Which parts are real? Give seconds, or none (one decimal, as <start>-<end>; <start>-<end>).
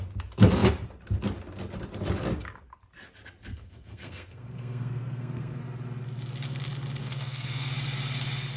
0.0-3.5; 5.6-7.0; 7.7-8.6